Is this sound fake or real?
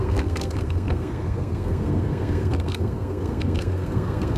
fake